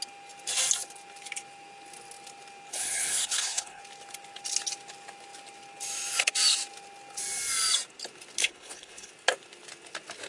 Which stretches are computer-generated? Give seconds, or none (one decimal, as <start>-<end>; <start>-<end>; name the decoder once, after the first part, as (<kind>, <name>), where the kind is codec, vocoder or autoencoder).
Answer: 2.7-3.8 (codec, HILCodec); 8.4-9.1